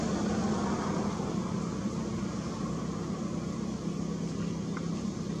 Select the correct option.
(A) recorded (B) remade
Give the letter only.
A